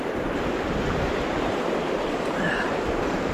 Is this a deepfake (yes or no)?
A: no